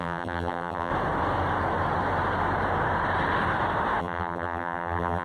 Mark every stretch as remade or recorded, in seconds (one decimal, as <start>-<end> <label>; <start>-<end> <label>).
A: 0.0-0.9 remade; 0.9-4.0 recorded; 4.0-5.2 remade